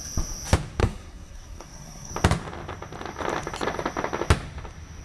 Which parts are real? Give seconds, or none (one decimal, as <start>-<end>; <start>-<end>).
0.0-0.8; 2.1-5.0